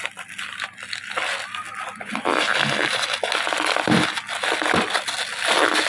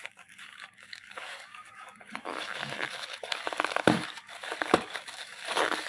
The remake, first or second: second